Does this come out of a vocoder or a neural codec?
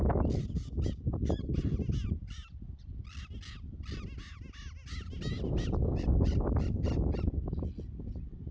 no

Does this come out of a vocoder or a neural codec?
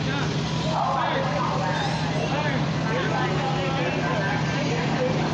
no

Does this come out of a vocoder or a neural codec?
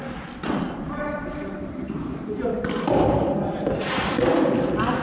no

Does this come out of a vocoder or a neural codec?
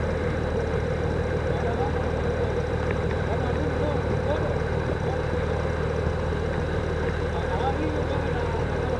no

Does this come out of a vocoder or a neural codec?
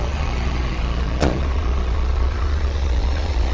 yes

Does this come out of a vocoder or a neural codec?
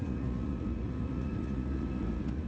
yes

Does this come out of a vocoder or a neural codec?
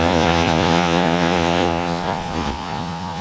yes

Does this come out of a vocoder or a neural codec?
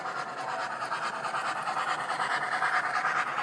no